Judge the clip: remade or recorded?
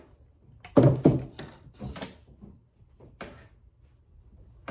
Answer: recorded